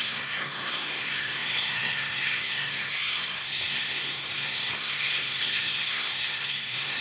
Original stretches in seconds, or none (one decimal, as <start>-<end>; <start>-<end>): none

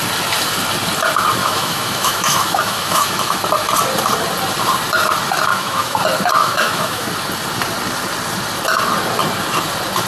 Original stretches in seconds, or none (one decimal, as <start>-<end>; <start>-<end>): 0.0-1.4; 3.4-5.5; 6.0-6.4; 7.1-10.1

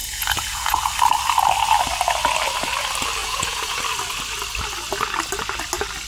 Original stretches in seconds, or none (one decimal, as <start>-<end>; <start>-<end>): 0.9-3.2; 3.8-6.1